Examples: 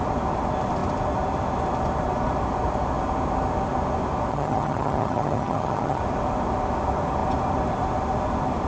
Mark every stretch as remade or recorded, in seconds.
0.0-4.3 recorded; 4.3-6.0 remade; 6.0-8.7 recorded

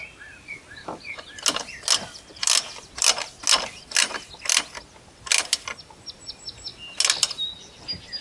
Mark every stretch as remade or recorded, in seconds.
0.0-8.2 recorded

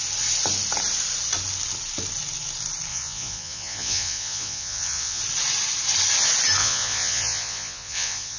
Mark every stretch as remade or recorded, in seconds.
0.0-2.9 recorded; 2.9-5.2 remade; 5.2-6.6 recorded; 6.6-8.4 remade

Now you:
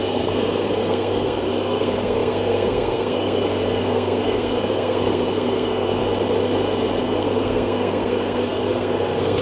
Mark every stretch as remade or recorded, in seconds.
0.0-6.0 remade; 6.0-7.0 recorded; 7.0-9.4 remade

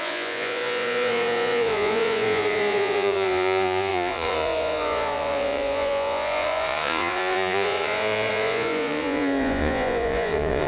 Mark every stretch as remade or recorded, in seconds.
0.0-10.7 remade

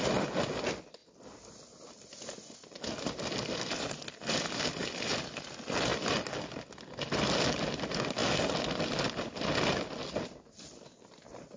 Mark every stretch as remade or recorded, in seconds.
0.0-11.6 recorded

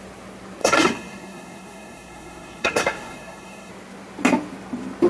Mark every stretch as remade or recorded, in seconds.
0.0-0.6 recorded; 0.6-3.7 remade; 3.7-5.1 recorded